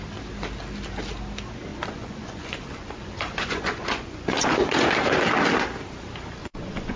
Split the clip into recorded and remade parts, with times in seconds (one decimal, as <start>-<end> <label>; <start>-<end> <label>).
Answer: 0.0-1.7 recorded; 1.7-4.9 remade; 4.9-6.4 recorded; 6.4-7.0 remade